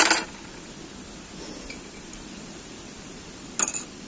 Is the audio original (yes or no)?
yes